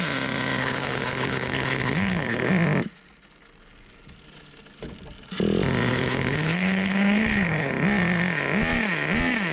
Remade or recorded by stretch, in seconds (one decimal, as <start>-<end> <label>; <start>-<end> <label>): 0.0-0.6 recorded; 0.6-2.5 remade; 2.5-5.9 recorded; 5.9-7.7 remade; 7.7-9.5 recorded